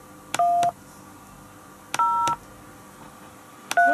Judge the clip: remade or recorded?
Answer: recorded